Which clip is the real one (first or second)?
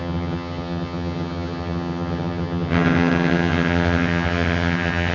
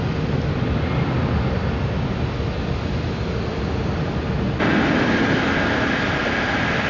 second